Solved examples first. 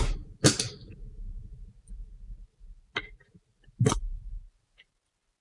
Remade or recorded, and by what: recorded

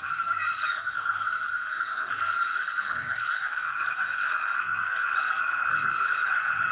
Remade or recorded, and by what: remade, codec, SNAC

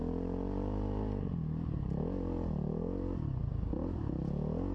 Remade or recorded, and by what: recorded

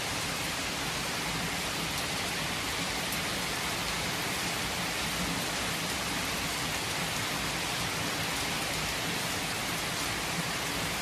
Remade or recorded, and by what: recorded